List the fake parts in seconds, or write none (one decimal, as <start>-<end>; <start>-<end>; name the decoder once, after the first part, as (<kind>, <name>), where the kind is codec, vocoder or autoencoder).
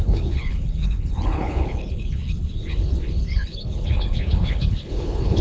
0.0-5.4 (codec, HILCodec)